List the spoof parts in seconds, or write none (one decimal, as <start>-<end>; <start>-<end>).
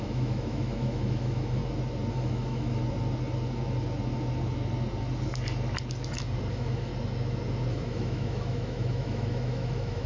0.0-1.6; 2.1-2.8; 6.5-6.9; 7.7-10.1